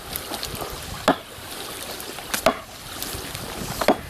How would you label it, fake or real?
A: real